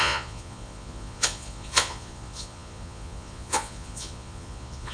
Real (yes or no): no